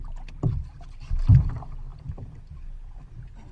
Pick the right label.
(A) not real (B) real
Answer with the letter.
B